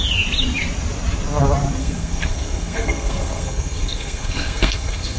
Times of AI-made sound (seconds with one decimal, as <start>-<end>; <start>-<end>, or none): 1.8-5.2